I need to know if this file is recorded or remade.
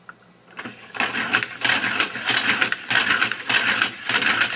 recorded